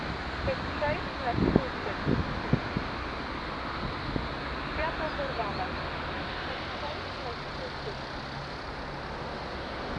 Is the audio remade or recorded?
recorded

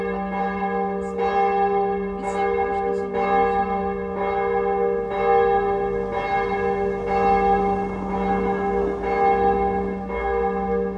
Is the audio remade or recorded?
recorded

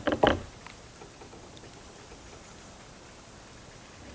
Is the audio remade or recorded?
recorded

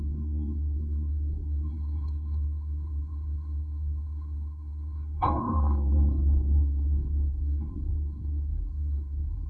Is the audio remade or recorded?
remade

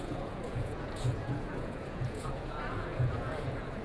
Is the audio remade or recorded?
remade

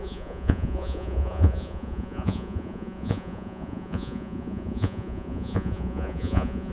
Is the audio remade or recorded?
remade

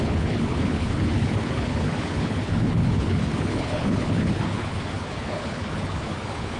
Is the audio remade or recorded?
remade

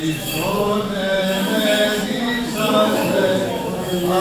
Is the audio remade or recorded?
remade